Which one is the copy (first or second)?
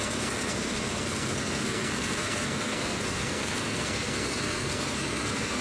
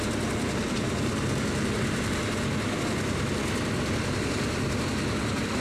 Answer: first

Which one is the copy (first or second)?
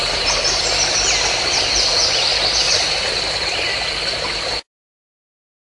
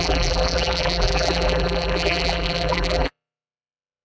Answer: second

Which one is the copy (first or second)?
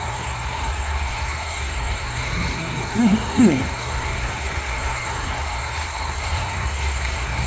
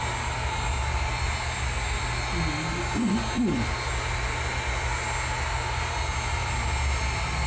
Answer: first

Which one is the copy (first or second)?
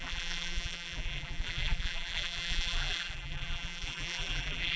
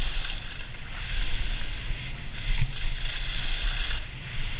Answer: first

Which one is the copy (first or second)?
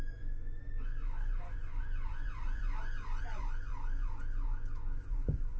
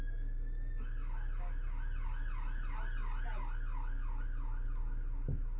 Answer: first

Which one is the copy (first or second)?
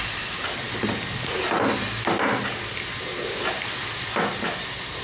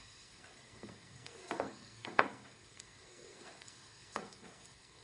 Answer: second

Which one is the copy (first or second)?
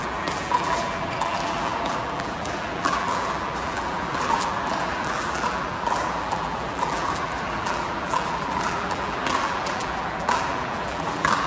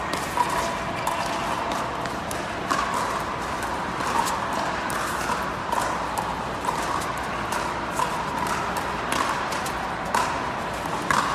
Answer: first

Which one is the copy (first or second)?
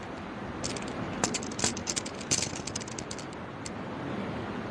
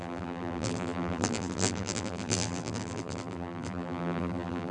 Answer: second